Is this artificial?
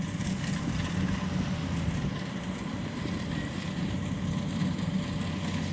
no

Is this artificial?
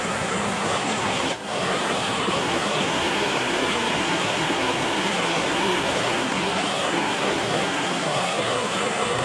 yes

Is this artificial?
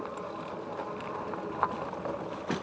no